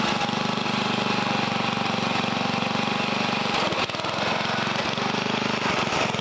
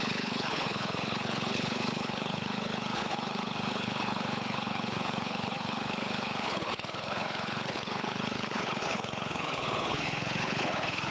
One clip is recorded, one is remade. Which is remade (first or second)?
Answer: second